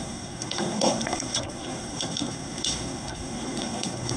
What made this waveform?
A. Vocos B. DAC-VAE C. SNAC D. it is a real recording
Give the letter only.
C